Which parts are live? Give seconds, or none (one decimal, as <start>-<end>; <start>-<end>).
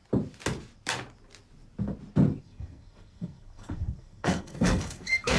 0.0-2.4